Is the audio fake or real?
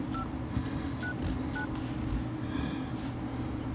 real